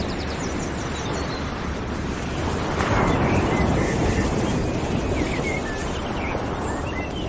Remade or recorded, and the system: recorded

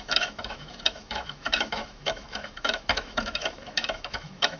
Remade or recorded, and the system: remade, autoencoder, DAC-VAE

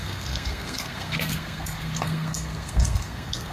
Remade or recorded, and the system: remade, codec, SNAC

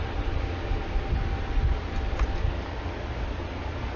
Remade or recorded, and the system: recorded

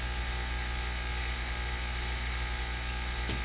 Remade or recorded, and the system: recorded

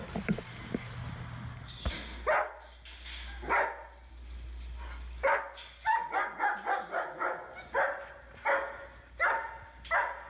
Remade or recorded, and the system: recorded